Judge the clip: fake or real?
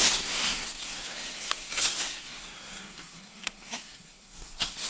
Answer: fake